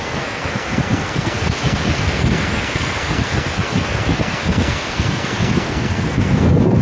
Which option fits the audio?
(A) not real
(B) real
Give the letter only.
A